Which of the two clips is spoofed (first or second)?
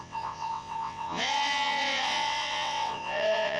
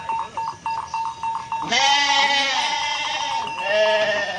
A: first